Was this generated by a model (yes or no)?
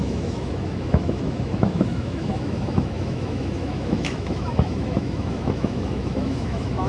yes